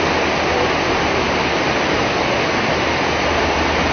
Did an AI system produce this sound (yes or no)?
no